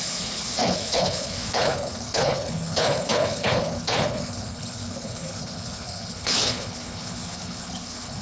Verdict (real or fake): fake